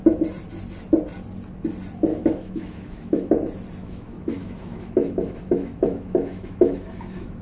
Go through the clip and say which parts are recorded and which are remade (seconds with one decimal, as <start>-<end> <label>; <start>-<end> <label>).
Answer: 0.0-2.1 recorded; 2.1-3.3 remade; 3.3-3.8 recorded; 3.8-7.4 remade